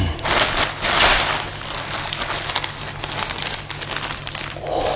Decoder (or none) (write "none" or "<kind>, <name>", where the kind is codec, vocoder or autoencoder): none